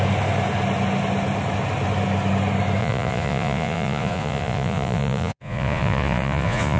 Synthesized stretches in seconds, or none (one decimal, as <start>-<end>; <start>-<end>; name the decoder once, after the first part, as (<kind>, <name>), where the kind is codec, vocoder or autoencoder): 2.8-6.8 (vocoder, Vocos)